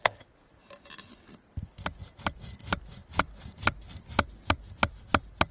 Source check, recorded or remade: recorded